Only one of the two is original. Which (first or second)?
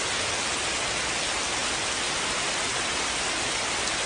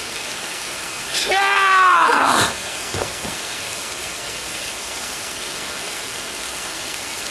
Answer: first